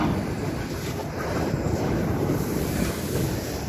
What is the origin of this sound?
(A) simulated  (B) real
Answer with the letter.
B